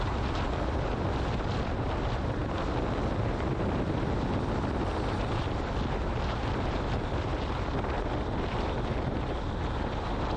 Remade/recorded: recorded